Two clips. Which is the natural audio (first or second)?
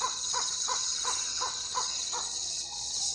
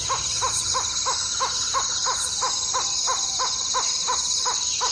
second